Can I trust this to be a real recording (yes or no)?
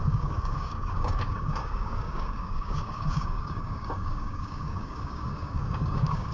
no